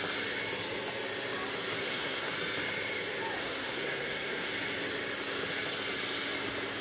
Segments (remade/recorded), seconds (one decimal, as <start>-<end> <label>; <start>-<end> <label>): 0.0-1.8 recorded; 1.8-2.3 remade; 2.3-3.4 recorded; 3.4-4.5 remade; 4.5-6.8 recorded